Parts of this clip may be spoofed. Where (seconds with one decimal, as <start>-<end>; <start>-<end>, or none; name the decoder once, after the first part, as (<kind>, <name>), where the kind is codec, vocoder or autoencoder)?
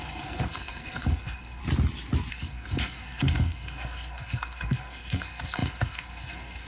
0.0-1.6 (codec, SNAC); 2.3-6.7